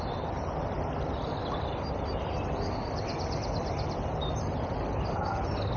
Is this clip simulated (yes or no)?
no